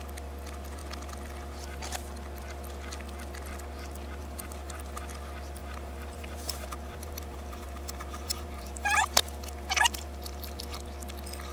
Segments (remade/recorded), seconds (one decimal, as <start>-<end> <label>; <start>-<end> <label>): 0.0-4.2 recorded; 4.2-5.0 remade; 5.0-5.6 recorded; 5.6-10.6 remade; 10.6-11.5 recorded